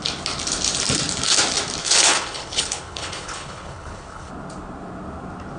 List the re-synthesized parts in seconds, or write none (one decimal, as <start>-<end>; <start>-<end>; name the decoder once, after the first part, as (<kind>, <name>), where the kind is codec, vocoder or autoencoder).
1.8-4.3 (codec, HILCodec)